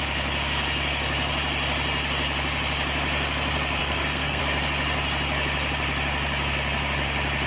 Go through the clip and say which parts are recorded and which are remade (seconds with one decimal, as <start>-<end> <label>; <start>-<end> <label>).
0.0-3.8 recorded; 3.8-4.4 remade; 4.4-7.5 recorded